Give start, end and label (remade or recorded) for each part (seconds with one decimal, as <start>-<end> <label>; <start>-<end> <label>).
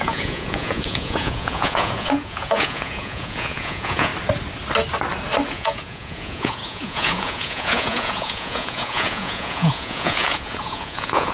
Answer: 0.0-4.1 remade; 4.1-5.5 recorded; 5.5-11.3 remade